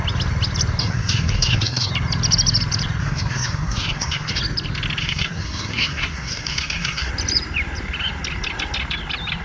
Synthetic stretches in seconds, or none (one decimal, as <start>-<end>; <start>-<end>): 0.8-1.9; 3.0-4.4; 5.0-7.1